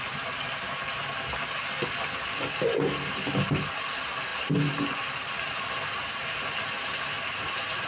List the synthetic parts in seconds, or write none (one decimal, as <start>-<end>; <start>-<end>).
none